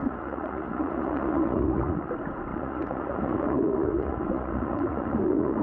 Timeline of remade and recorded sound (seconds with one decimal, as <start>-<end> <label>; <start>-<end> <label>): 0.0-2.1 remade; 2.1-2.5 recorded; 2.5-5.6 remade